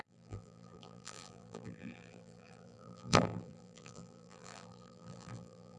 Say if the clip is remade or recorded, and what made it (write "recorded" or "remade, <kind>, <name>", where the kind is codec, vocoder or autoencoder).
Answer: remade, vocoder, BigVGAN v2